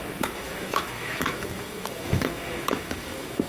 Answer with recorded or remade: remade